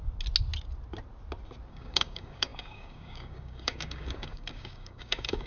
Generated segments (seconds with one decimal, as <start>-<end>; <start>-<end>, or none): 1.7-5.5